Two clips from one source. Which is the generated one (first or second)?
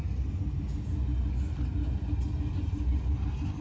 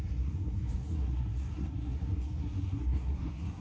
second